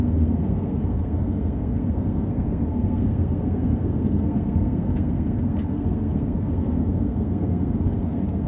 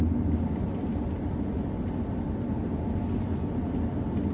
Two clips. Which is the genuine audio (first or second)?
second